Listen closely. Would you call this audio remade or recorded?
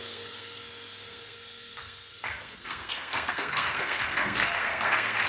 remade